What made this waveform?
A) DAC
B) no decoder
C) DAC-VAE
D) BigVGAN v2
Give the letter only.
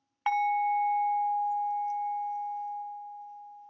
B